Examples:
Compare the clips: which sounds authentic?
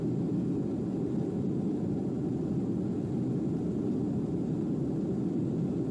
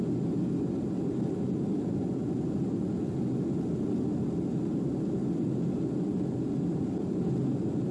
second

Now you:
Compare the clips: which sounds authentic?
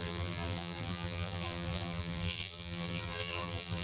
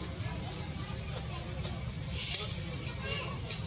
second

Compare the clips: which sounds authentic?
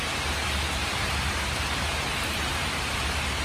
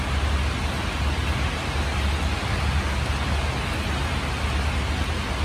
second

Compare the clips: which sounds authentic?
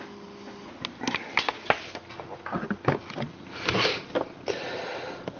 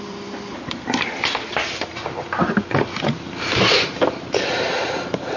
first